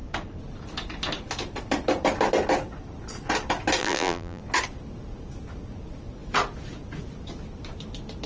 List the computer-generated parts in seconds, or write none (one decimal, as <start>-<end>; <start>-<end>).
3.8-4.4